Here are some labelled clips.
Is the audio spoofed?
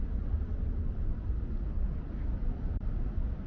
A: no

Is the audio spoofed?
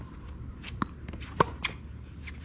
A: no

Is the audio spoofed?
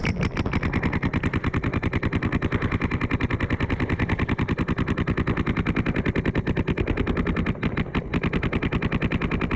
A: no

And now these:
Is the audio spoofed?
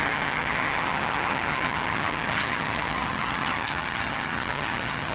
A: yes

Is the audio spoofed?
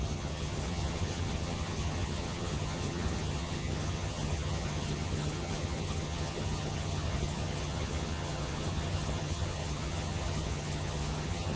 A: yes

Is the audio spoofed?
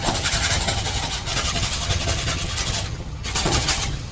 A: yes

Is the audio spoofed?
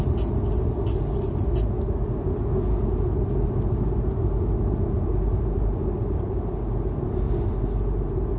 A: no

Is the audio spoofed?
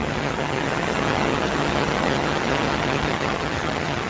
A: yes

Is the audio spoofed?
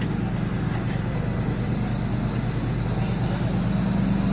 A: no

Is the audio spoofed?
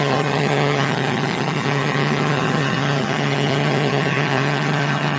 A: yes